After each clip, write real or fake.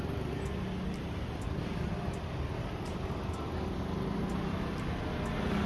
real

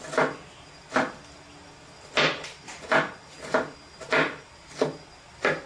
real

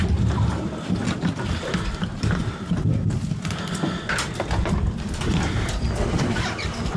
real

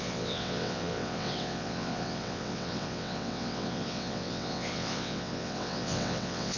fake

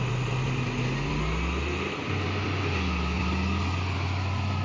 real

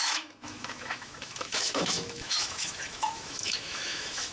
fake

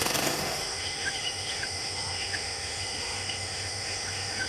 fake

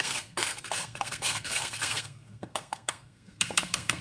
fake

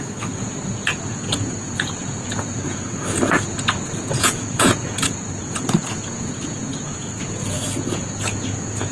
fake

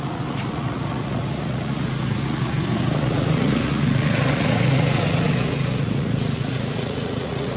fake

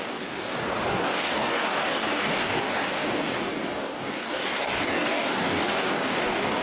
fake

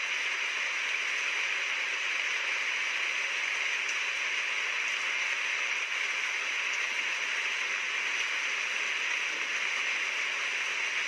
real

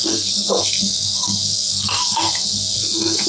fake